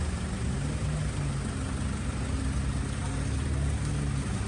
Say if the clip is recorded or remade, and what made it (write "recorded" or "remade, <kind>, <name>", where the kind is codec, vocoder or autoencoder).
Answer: recorded